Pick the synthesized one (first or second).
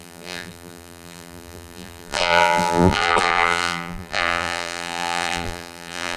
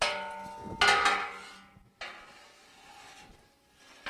first